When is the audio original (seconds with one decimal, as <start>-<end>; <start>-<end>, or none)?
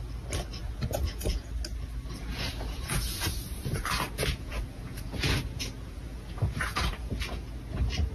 0.0-0.6; 1.5-2.3; 7.1-8.1